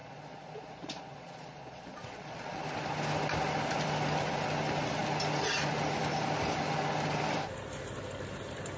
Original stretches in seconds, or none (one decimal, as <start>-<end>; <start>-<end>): 2.6-8.8